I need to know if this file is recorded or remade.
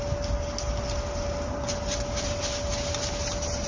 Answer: recorded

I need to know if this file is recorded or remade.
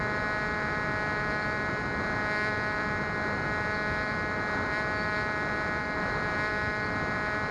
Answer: recorded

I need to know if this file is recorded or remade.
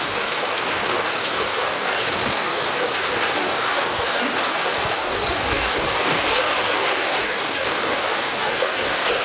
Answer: remade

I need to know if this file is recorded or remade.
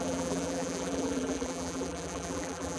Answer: remade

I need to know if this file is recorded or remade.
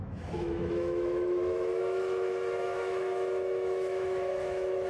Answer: remade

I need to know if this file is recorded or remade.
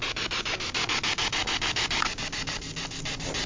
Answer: recorded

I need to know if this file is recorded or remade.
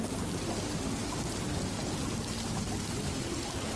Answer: recorded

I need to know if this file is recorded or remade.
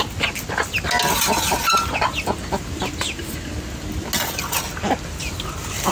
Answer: recorded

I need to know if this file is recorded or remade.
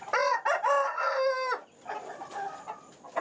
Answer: recorded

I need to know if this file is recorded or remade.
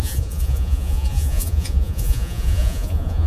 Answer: remade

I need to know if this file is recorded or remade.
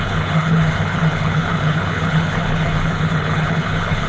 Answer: remade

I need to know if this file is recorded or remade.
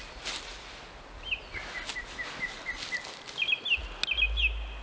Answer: recorded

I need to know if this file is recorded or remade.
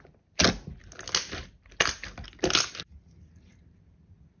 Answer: recorded